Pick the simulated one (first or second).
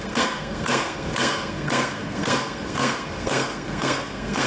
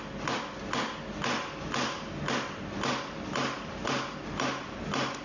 first